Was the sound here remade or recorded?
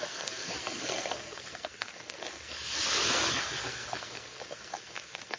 remade